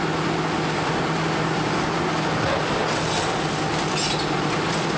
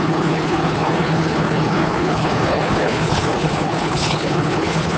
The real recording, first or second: first